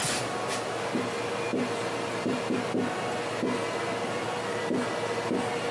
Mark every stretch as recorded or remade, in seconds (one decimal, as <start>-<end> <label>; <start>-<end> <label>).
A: 0.0-5.7 recorded